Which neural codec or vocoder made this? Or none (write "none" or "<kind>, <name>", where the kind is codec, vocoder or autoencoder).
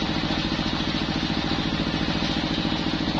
none